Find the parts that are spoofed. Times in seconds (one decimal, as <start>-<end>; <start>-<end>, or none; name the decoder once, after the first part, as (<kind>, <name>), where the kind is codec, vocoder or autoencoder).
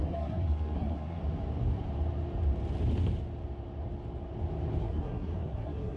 0.0-1.2 (codec, SNAC); 4.8-6.0